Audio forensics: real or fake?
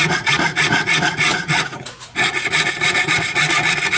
fake